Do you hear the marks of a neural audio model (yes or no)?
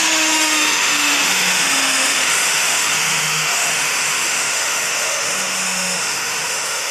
yes